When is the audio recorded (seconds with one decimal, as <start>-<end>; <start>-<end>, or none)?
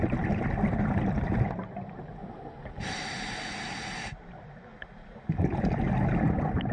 0.0-6.7